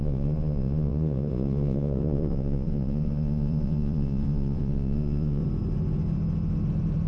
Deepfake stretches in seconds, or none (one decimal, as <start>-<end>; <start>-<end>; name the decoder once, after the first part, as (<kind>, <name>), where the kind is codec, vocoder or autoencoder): 0.0-5.4 (vocoder, Vocos)